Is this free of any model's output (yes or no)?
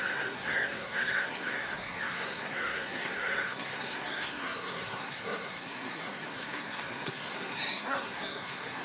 no